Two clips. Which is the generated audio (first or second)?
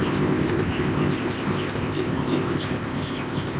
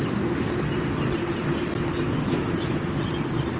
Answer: first